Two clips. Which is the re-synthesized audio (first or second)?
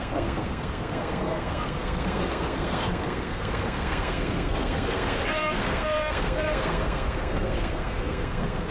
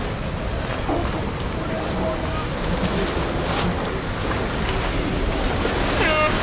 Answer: first